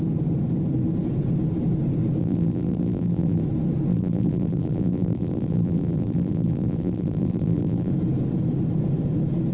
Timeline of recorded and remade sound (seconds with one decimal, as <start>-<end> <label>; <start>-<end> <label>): 0.0-2.2 recorded; 2.2-3.4 remade; 3.4-3.9 recorded; 3.9-7.9 remade; 7.9-9.5 recorded